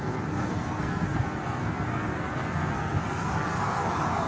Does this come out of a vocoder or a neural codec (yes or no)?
yes